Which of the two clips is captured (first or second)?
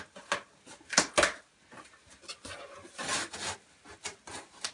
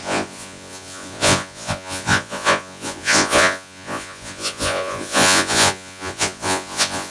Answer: first